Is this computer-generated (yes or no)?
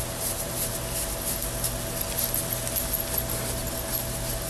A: no